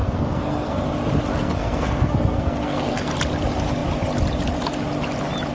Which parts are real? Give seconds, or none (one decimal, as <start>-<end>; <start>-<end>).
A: 0.8-1.3; 3.1-5.5